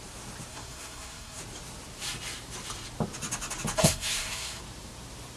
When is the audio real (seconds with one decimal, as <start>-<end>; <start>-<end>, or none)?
0.0-0.5; 1.4-3.8; 4.6-5.4